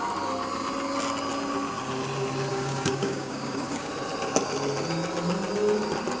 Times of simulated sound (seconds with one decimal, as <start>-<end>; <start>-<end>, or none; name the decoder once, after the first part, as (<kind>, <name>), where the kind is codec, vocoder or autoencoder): 2.5-3.9 (codec, DAC)